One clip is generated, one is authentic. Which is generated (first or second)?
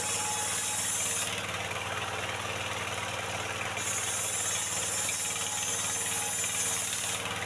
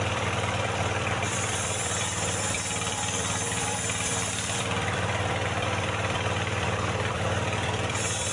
second